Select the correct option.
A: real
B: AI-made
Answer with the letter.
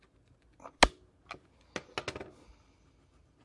A